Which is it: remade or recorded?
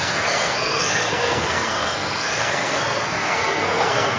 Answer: remade